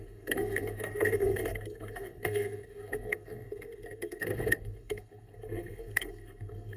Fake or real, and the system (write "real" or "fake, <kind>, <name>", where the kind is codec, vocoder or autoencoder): fake, codec, SNAC